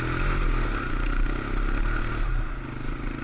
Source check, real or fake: real